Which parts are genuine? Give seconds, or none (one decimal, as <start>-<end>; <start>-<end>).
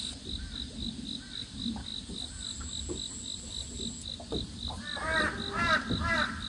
0.0-6.5